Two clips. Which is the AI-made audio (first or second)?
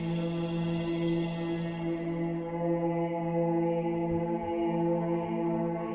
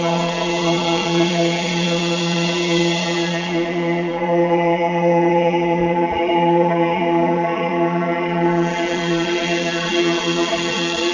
second